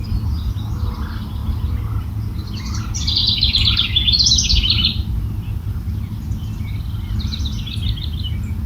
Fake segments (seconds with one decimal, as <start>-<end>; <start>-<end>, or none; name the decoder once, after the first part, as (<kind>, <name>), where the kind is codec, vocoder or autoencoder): none